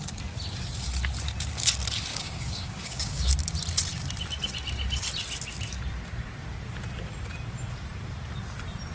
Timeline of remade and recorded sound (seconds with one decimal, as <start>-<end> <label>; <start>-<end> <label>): 0.0-2.1 recorded; 2.1-3.3 remade; 3.3-8.9 recorded

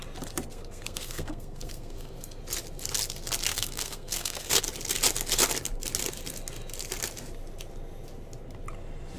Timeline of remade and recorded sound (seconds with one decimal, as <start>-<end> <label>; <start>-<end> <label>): 0.0-0.5 recorded; 0.5-2.4 remade; 2.4-3.5 recorded; 3.5-4.6 remade; 4.6-9.2 recorded

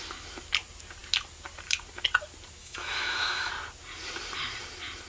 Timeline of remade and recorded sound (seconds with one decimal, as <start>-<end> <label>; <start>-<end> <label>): 0.0-2.6 recorded; 2.6-3.5 remade; 3.5-5.1 recorded

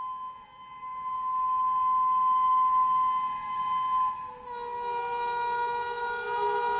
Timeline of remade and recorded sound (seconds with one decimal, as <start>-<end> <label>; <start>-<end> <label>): 0.0-6.8 recorded

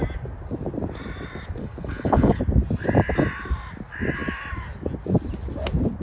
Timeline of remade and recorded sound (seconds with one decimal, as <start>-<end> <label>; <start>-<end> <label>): 0.0-1.6 recorded; 1.6-2.4 remade; 2.4-6.0 recorded

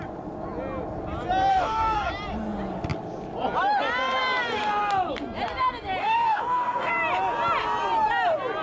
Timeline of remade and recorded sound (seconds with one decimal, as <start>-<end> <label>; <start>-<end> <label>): 0.0-1.5 recorded; 1.5-2.1 remade; 2.1-6.0 recorded; 6.0-6.9 remade; 6.9-8.6 recorded

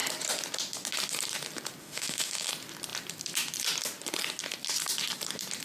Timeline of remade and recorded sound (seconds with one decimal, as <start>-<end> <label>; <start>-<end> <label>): 0.0-1.8 recorded; 1.8-2.5 remade; 2.5-5.6 recorded

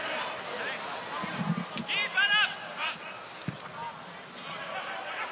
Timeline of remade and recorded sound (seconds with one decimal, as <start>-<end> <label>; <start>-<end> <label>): 0.0-5.3 recorded